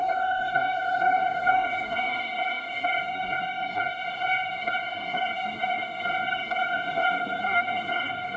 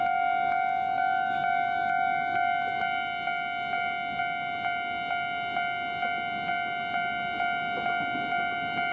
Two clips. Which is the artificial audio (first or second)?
first